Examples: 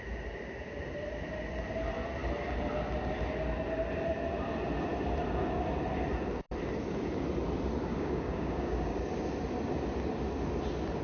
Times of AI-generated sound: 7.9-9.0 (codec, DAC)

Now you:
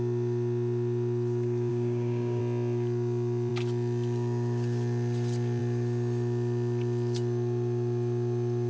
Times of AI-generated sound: 1.7-2.4 (codec, DAC)

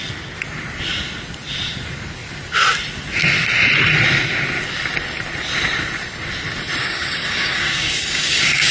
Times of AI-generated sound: 6.8-8.7 (codec, DAC)

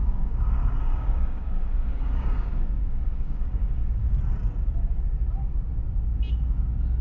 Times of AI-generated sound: 0.0-4.2 (codec, DAC)

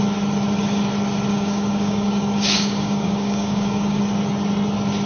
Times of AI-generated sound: 1.3-4.0 (codec, DAC)